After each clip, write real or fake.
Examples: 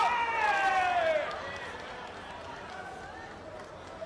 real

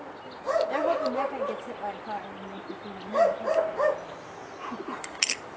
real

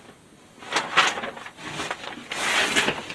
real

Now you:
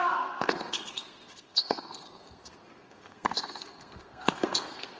fake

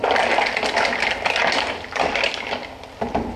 real